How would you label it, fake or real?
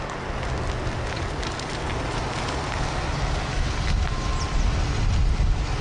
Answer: real